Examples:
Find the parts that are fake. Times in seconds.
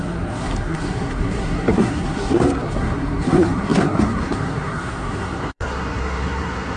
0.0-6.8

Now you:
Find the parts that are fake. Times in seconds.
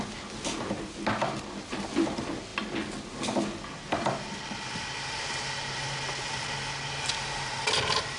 none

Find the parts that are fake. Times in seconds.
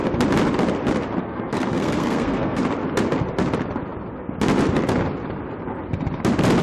1.2-2.6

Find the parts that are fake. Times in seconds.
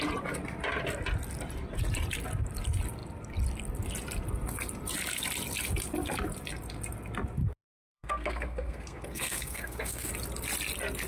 7.4-10.1